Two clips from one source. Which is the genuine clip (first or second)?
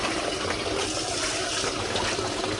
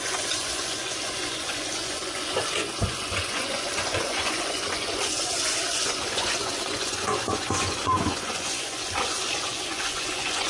first